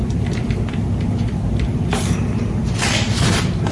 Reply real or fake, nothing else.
real